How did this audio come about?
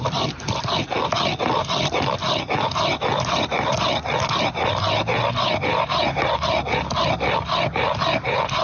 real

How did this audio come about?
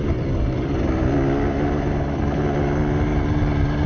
real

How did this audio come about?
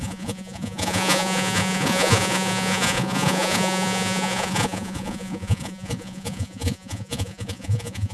fake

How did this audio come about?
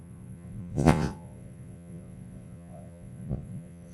fake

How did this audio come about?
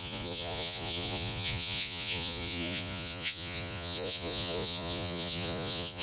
fake